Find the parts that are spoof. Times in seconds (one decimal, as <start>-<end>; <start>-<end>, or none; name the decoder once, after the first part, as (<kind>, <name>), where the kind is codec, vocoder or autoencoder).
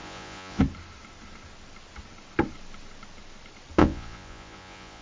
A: 0.0-0.6 (vocoder, Vocos); 3.8-5.0